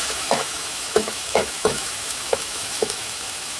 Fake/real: fake